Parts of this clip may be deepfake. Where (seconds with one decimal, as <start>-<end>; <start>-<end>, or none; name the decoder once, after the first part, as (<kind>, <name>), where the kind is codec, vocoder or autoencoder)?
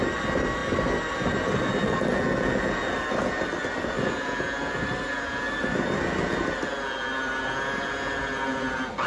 none